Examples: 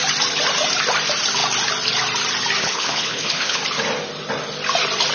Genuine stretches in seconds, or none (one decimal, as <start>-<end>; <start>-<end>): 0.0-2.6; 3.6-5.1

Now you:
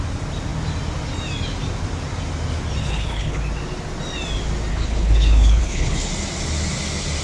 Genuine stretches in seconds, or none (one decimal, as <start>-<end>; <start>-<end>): 0.0-2.8; 3.4-4.7; 6.1-7.2

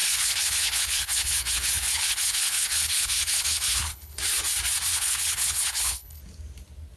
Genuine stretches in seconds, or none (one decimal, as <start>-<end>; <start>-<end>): 4.2-4.9; 6.2-7.0

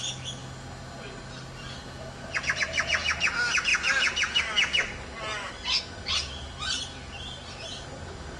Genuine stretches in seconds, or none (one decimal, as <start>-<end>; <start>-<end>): 0.0-8.4

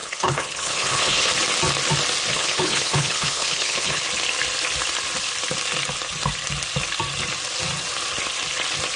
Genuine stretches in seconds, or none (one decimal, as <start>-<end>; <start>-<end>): 1.3-2.3; 4.0-9.0